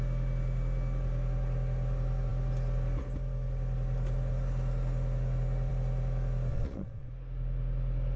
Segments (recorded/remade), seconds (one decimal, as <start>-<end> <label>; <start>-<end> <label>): 0.0-6.5 recorded; 6.5-7.1 remade; 7.1-8.2 recorded